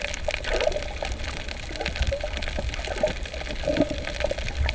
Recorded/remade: recorded